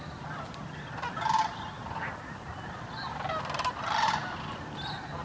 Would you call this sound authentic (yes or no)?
yes